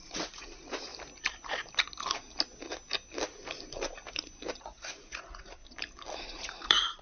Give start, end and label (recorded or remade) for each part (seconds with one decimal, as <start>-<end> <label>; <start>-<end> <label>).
0.0-0.9 remade; 0.9-4.6 recorded; 4.6-5.6 remade; 5.6-6.2 recorded; 6.2-7.0 remade